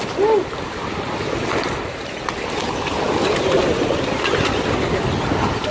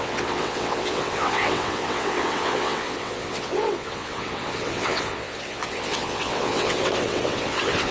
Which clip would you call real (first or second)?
first